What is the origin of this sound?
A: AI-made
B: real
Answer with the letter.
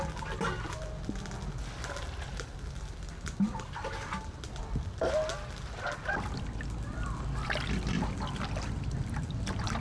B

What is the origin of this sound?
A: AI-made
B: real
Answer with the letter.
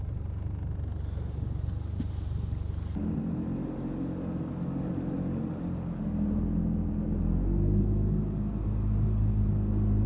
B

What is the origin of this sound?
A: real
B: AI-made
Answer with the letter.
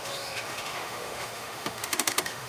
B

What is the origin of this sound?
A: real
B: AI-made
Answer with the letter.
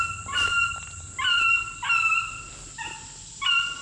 B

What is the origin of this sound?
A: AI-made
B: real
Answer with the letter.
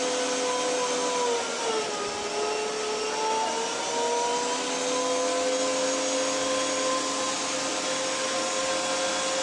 B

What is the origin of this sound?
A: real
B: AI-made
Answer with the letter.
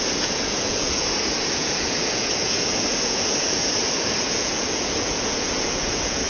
B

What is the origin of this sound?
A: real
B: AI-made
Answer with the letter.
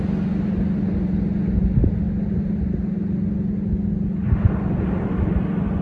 A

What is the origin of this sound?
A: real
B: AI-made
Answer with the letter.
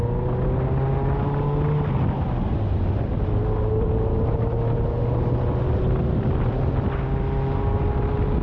A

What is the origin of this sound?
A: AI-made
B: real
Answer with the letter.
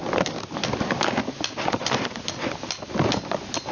B